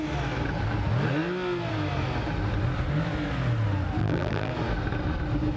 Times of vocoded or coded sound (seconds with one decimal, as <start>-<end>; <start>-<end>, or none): 4.0-4.5